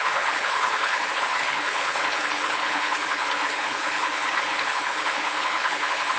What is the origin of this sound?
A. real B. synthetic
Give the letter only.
B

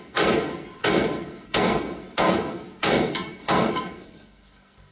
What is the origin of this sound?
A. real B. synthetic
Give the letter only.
B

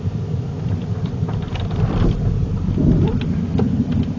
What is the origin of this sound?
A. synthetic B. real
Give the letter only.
B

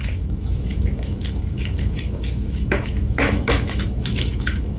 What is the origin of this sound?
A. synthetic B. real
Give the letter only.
A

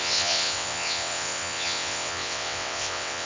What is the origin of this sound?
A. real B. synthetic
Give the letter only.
B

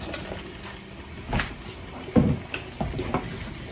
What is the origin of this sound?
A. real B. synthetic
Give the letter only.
A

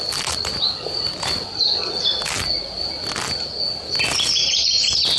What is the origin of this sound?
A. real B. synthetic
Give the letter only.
A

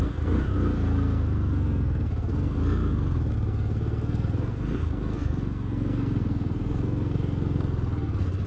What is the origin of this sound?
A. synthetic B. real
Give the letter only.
A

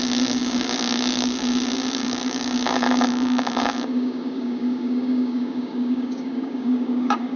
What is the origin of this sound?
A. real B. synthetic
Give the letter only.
B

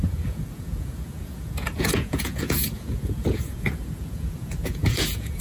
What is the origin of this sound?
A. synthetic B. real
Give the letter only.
A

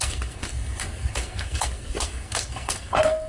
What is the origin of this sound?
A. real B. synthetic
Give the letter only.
B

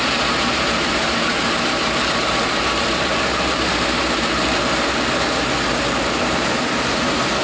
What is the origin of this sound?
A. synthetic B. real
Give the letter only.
A